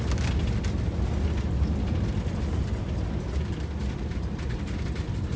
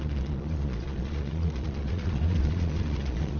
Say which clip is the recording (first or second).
first